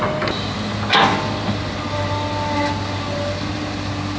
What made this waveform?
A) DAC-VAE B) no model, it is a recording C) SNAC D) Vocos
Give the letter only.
B